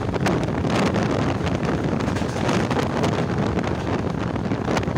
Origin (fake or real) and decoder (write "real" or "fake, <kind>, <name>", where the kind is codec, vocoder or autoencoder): fake, vocoder, BigVGAN v2